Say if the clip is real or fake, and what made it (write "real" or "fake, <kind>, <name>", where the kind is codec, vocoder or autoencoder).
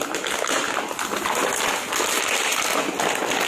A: real